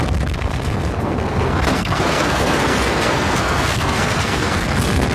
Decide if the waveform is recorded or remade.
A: remade